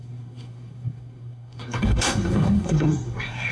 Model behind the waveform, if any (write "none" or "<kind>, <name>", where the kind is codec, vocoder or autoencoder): codec, SNAC